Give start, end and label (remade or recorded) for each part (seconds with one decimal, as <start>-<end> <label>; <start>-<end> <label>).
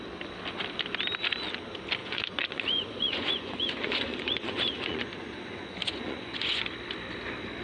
0.0-2.0 recorded; 2.0-6.6 remade; 6.6-7.6 recorded